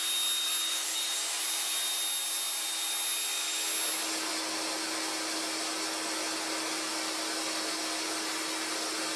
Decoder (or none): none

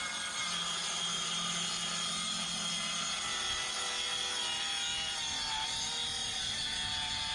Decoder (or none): none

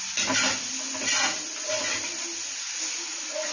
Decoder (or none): none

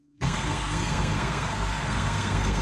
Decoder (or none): codec, SNAC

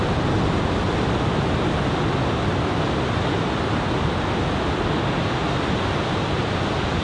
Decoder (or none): none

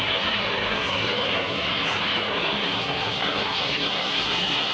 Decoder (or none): codec, SNAC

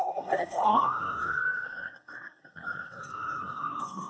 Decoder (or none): codec, SNAC